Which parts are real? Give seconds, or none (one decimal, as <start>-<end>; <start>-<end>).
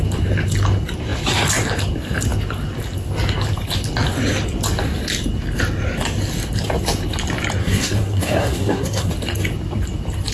0.0-7.6; 9.1-10.3